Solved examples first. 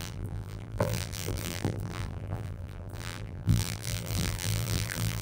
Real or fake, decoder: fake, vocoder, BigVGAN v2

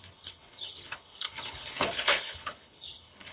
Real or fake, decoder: fake, codec, HILCodec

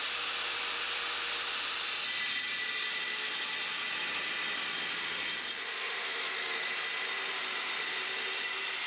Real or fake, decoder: real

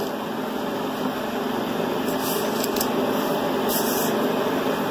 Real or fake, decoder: real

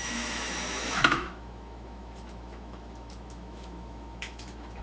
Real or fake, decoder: fake, autoencoder, DAC-VAE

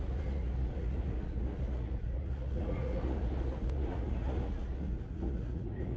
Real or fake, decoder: fake, vocoder, Vocos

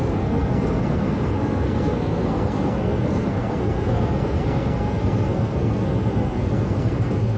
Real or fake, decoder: fake, codec, SNAC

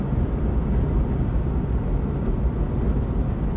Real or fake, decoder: real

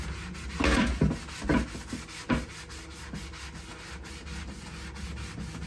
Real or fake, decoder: real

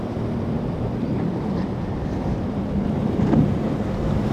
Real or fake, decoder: fake, vocoder, BigVGAN v2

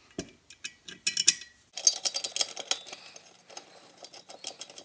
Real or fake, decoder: real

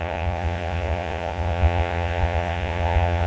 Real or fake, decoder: fake, vocoder, Vocos